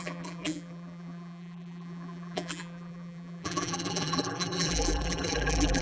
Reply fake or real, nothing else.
fake